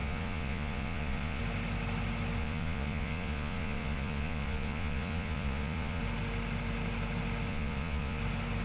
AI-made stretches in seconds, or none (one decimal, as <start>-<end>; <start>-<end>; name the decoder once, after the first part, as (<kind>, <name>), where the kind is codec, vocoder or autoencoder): 0.0-1.4 (vocoder, Vocos); 2.4-6.0; 7.5-8.2